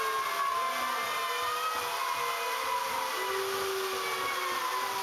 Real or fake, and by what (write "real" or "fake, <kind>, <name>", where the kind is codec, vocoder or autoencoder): real